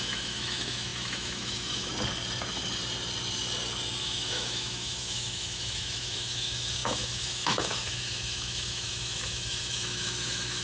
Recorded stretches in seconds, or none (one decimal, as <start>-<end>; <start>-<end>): 1.9-4.0